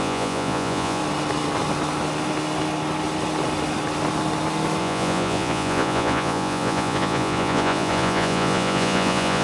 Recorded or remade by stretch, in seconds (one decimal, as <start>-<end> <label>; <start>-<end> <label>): 0.0-1.0 remade; 1.0-4.8 recorded; 4.8-9.4 remade